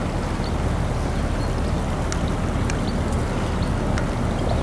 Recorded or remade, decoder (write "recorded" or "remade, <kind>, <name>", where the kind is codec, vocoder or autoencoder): recorded